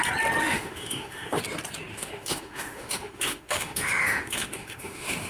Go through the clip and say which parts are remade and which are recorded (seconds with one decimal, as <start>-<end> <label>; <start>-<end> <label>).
0.0-0.4 recorded; 0.4-1.4 remade; 1.4-1.9 recorded; 1.9-5.3 remade